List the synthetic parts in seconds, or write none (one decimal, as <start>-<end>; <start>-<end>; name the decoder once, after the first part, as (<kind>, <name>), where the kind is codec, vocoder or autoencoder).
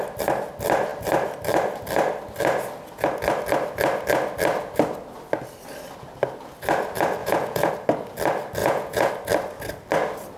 7.2-7.7 (vocoder, Vocos); 8.6-9.1